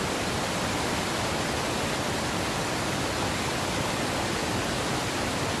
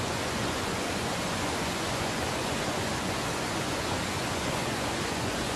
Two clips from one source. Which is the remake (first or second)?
second